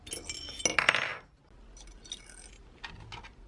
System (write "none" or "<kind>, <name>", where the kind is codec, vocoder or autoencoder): none